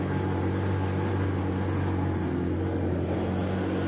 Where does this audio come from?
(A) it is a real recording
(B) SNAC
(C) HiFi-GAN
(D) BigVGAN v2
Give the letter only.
A